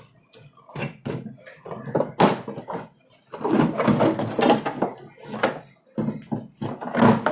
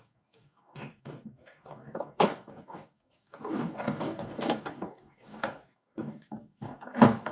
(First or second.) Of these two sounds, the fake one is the second